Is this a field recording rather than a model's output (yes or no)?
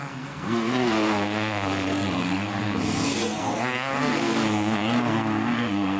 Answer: no